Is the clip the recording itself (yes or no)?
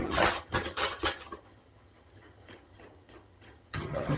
no